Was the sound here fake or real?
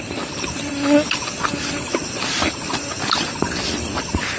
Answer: real